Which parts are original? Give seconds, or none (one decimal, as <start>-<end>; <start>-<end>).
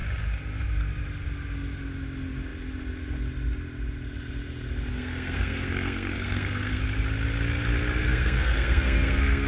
0.0-4.9; 6.8-8.0